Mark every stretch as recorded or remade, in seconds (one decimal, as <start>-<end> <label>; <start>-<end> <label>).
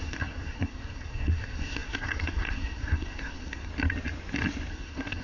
0.0-3.7 remade; 3.7-4.7 recorded; 4.7-5.2 remade